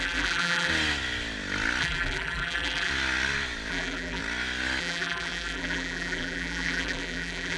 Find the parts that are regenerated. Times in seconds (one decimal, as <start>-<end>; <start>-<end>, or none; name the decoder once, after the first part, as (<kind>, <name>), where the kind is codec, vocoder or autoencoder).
0.0-0.7 (vocoder, BigVGAN v2); 1.8-2.9; 3.7-4.2; 4.8-7.6

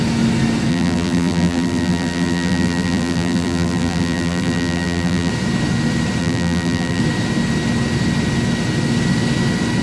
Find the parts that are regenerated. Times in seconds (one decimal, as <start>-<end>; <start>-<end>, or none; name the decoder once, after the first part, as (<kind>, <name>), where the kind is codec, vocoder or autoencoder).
0.7-5.3 (vocoder, BigVGAN v2); 6.2-7.0

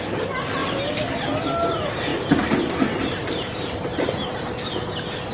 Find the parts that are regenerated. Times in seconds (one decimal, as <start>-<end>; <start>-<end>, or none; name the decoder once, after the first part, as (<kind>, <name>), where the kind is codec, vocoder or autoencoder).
0.6-1.3 (vocoder, BigVGAN v2); 2.1-3.8